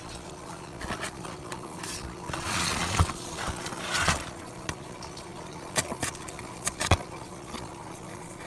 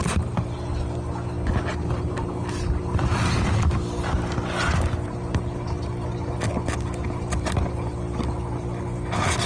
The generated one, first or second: first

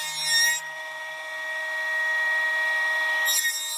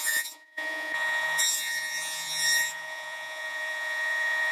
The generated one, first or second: second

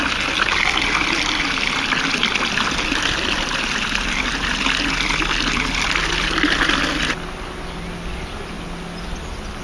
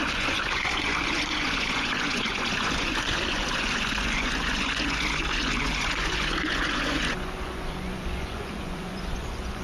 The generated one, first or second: second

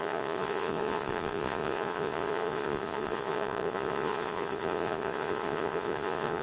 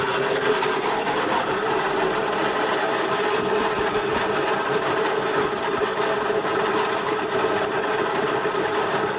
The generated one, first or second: first